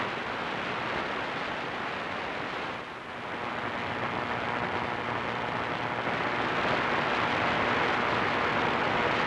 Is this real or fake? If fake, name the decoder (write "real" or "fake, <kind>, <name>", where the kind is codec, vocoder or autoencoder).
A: real